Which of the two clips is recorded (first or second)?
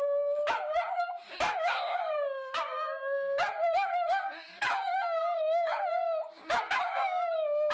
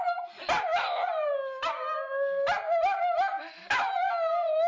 second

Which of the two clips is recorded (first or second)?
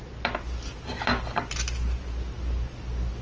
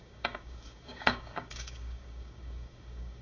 first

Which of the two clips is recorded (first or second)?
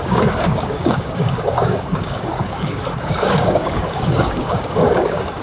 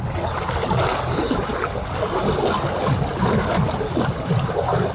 second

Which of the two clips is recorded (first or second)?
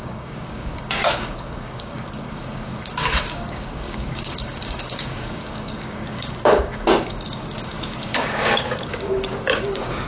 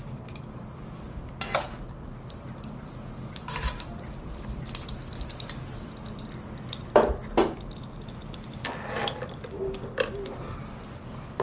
second